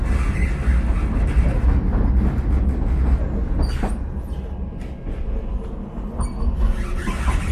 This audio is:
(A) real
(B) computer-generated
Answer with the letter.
A